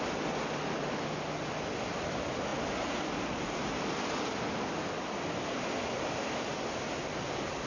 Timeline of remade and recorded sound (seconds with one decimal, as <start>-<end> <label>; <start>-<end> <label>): 0.0-7.7 recorded